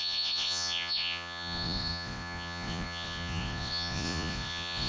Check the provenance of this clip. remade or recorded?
remade